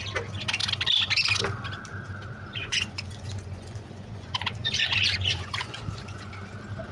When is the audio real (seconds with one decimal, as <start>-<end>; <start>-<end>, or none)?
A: 0.0-2.6; 6.3-6.9